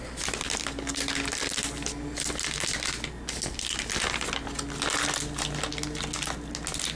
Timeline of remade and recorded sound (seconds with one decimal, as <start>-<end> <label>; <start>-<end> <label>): 0.0-7.0 recorded